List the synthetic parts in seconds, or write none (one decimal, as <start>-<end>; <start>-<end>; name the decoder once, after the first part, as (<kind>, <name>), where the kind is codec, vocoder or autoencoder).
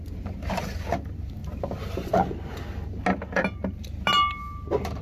none